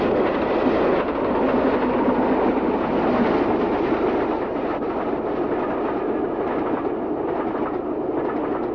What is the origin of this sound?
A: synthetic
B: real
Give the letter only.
B